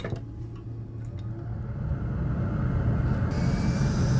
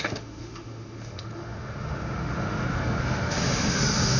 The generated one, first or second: second